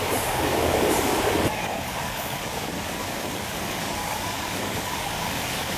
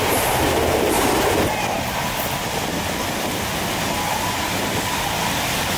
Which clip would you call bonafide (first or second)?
second